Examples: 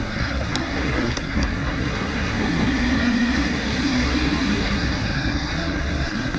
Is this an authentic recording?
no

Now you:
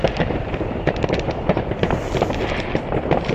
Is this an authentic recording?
no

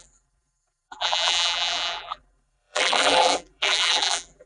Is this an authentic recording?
no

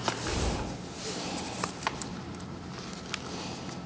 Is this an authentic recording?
yes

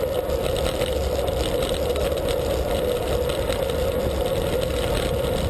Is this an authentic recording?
yes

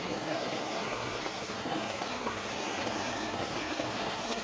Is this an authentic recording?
no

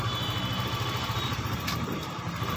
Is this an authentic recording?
no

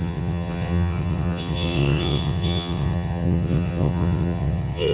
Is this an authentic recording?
no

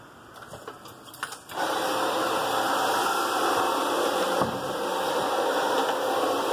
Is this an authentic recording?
yes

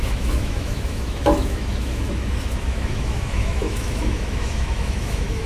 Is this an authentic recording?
no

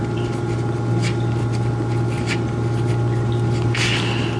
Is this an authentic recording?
yes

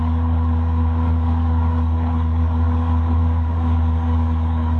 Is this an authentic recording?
no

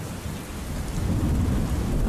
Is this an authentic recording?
yes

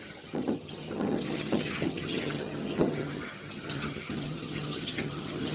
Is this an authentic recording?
no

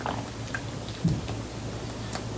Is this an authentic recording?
yes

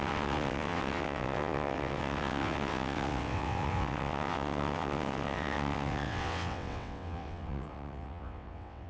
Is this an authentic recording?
no